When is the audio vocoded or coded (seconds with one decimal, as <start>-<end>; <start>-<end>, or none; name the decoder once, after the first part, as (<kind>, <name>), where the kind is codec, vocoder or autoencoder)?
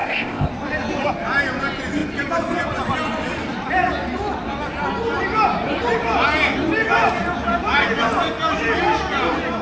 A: 0.0-0.5 (codec, ZipCodec)